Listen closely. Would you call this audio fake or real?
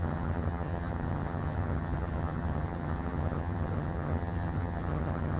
fake